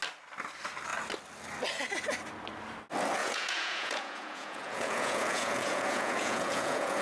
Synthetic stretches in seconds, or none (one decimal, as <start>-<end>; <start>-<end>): 3.2-7.0

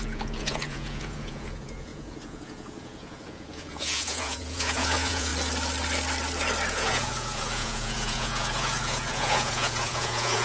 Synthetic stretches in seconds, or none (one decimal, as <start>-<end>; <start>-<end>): 0.0-5.3; 6.7-10.4

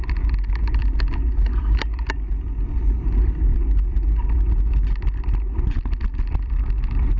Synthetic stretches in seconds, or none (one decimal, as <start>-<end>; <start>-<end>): none

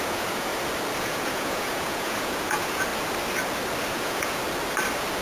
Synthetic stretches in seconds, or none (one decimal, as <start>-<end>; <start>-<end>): 0.0-0.5; 1.0-2.9; 3.9-4.4

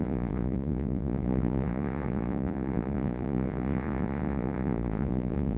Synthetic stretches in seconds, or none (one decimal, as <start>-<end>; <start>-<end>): 0.0-5.6

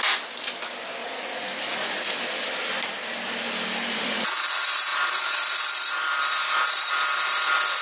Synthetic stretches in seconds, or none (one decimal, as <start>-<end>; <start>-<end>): 1.0-2.1; 3.9-4.4